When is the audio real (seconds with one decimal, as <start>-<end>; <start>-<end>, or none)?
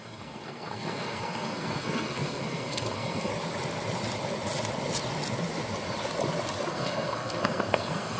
3.3-6.7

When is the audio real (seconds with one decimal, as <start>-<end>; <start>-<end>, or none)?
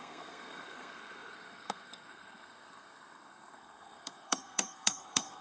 none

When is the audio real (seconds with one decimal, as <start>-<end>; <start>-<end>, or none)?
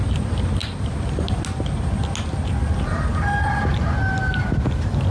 0.0-5.1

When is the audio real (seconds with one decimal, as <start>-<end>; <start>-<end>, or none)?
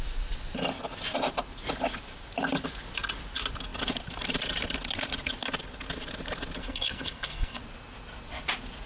0.0-6.6; 7.6-8.9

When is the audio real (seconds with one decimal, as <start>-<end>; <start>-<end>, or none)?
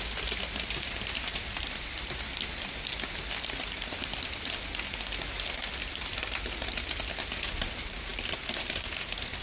0.0-9.4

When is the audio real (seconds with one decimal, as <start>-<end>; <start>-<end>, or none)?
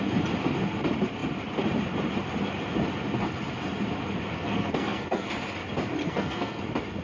0.0-4.3; 5.3-6.0; 6.6-7.0